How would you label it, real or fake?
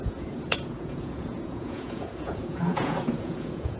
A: fake